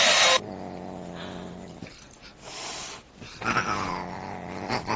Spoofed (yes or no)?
no